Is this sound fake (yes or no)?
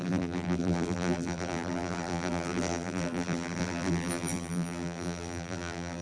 yes